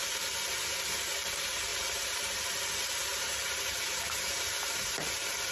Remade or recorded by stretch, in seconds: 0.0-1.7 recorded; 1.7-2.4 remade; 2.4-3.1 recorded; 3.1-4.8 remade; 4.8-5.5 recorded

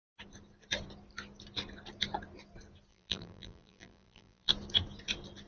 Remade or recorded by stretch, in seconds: 0.0-2.9 recorded; 2.9-4.5 remade; 4.5-5.5 recorded

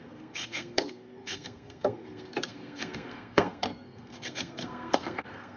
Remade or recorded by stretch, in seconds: 0.0-5.6 remade

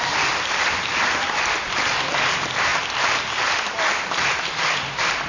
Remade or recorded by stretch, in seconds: 0.0-2.7 remade; 2.7-3.8 recorded; 3.8-5.3 remade

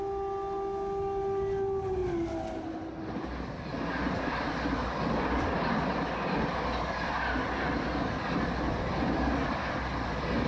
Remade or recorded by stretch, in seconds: 0.0-10.5 recorded

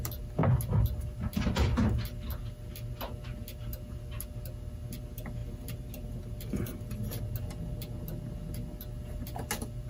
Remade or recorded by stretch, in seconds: 0.0-9.9 recorded

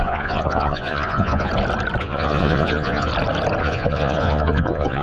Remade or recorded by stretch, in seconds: 0.0-1.5 remade; 1.5-2.0 recorded; 2.0-3.1 remade; 3.1-3.6 recorded; 3.6-5.0 remade

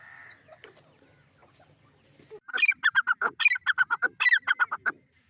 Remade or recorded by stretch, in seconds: 0.0-5.3 recorded